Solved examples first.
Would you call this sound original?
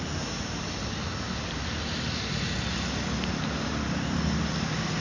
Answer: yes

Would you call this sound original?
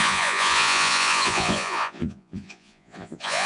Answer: no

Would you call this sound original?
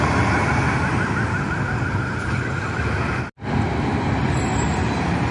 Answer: yes